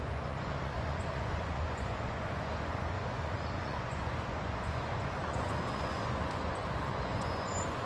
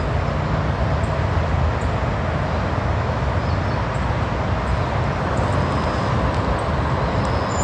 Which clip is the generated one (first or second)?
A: first